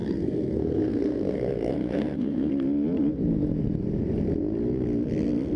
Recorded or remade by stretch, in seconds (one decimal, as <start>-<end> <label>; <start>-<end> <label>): 0.0-2.5 remade; 2.5-5.6 recorded